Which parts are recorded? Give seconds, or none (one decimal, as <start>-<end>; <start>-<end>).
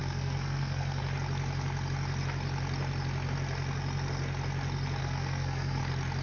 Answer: 1.0-5.0; 5.8-6.2